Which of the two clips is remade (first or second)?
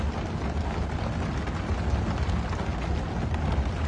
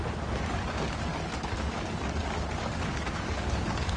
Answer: second